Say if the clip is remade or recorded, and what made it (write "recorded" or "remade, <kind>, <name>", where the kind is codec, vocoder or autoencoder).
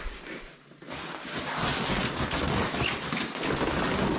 recorded